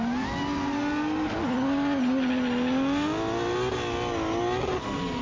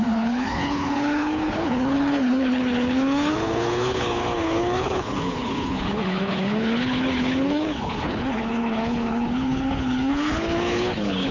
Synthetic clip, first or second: second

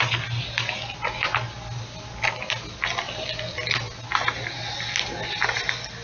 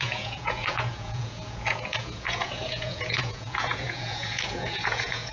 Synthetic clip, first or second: second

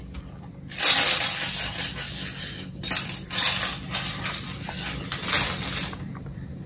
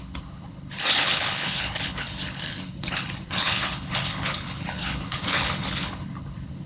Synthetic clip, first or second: second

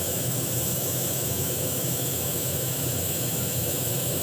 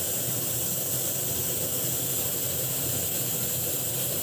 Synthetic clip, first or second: first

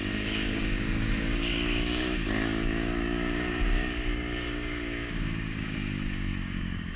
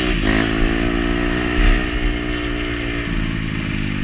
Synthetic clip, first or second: first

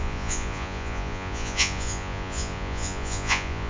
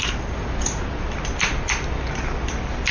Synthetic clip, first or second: first